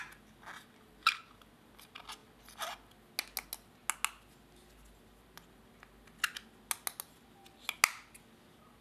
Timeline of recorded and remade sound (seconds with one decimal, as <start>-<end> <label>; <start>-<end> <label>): 0.0-8.8 recorded